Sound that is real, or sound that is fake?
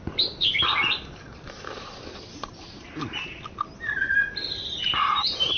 real